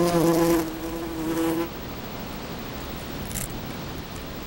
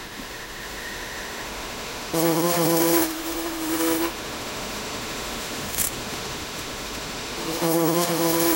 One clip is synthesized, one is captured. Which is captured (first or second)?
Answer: first